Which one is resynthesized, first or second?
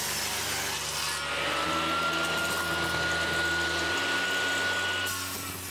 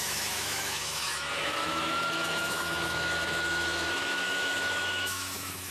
second